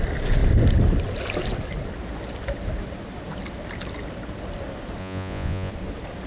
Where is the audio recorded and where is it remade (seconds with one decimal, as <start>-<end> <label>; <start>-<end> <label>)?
0.0-5.0 recorded; 5.0-5.7 remade; 5.7-6.3 recorded